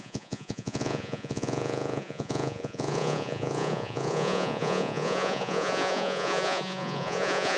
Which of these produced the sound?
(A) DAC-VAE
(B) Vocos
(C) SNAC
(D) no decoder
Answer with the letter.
B